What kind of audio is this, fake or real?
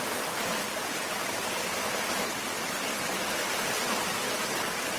real